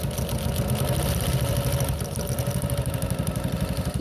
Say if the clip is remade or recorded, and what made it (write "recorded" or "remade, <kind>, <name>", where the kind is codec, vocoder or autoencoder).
recorded